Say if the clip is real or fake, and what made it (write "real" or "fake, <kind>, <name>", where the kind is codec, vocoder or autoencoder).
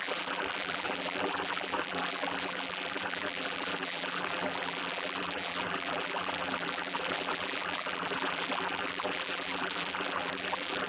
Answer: fake, vocoder, BigVGAN v2